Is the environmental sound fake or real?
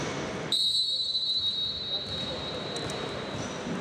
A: real